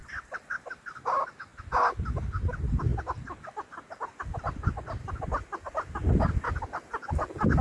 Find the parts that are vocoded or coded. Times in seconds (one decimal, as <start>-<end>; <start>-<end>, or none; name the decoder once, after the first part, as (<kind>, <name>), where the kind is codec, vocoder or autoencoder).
0.0-1.5 (vocoder, BigVGAN v2); 2.3-2.9; 5.7-7.6